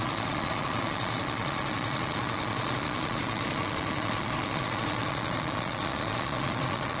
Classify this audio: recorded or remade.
remade